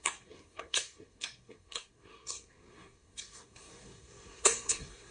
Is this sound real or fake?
fake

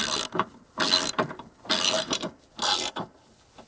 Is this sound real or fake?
real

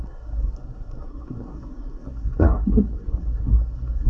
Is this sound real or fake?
fake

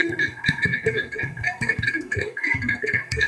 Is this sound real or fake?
fake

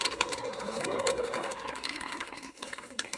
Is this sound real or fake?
fake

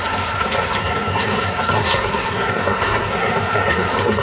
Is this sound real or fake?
fake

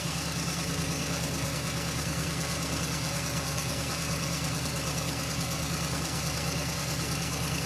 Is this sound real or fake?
fake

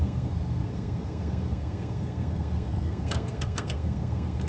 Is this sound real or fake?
fake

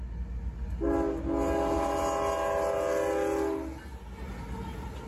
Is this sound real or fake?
real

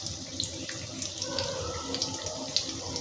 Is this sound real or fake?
real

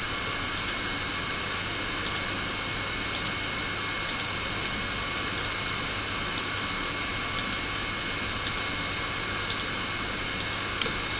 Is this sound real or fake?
real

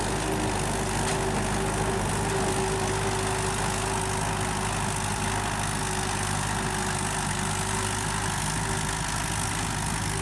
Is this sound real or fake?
real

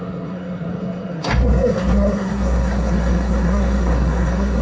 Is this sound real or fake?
fake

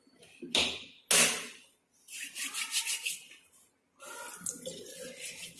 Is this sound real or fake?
real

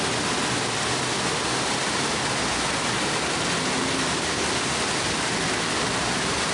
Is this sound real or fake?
real